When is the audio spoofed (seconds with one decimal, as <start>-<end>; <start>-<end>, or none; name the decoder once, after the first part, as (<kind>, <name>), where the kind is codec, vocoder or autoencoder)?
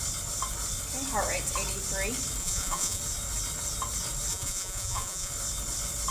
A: 2.4-3.0 (vocoder, Vocos); 4.3-5.3